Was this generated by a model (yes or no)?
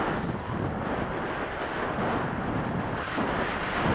no